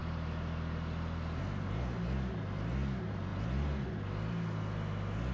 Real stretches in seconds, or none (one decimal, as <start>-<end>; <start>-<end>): 0.0-5.3